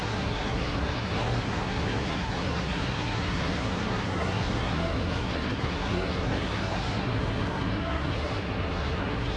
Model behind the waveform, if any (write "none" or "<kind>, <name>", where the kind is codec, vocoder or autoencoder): codec, SNAC